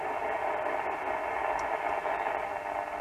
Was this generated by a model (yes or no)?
no